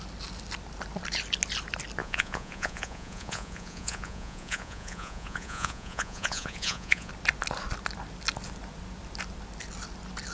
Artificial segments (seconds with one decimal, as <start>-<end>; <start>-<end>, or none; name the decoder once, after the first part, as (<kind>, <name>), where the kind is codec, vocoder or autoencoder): 2.0-7.1 (vocoder, Vocos)